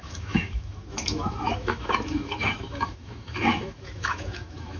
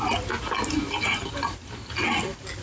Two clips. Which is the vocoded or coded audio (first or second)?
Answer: first